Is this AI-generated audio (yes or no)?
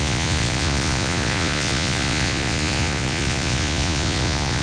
yes